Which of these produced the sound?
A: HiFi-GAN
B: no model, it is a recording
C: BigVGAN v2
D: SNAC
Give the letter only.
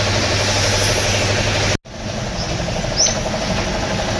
B